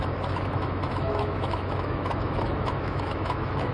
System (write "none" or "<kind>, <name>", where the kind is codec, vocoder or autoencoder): autoencoder, DAC-VAE